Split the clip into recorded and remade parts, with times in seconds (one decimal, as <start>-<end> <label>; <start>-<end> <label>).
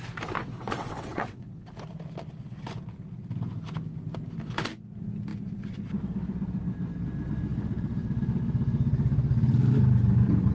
0.0-0.4 recorded; 0.4-1.7 remade; 1.7-10.5 recorded